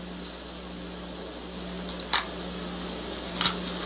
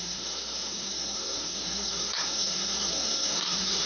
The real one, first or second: first